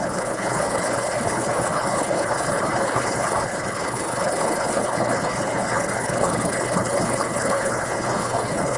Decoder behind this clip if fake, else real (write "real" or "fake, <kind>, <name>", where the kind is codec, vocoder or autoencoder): fake, codec, HILCodec